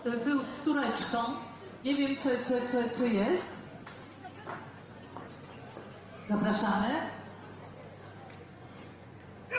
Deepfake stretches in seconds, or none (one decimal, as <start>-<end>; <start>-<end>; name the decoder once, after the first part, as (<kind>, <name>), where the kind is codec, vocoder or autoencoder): 0.0-0.5 (vocoder, Vocos); 3.4-4.1; 4.9-6.2; 8.4-9.6